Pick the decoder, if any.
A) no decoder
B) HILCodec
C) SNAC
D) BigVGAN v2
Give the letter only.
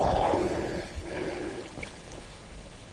B